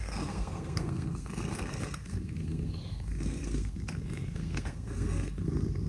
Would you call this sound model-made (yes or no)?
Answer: yes